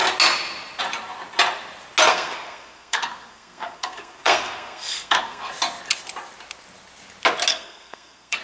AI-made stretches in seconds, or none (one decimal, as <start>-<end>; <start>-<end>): 2.1-5.5; 7.5-8.4